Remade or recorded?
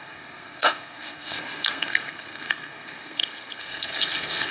remade